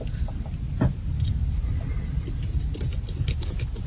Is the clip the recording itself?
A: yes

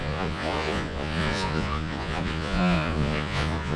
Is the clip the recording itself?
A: no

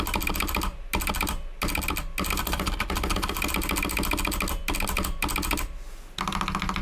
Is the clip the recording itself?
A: yes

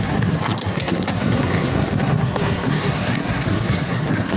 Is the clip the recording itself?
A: no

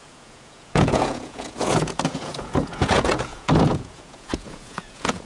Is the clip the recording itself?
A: no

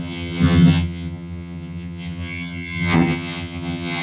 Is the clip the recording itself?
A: no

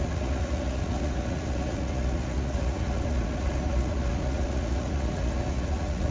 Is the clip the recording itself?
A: no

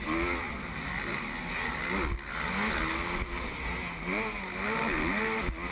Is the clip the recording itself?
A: yes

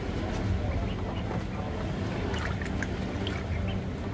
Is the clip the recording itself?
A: yes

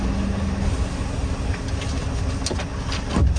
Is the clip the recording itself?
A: yes